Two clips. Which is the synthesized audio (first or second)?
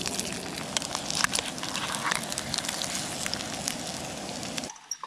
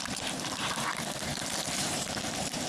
second